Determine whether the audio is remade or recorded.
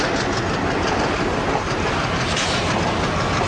recorded